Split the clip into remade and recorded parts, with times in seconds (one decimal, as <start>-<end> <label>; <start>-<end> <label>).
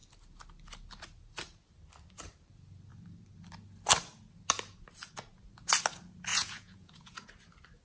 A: 0.0-6.3 recorded; 6.3-7.3 remade; 7.3-7.8 recorded